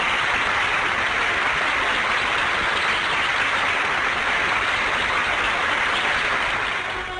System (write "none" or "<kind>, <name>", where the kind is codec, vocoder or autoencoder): none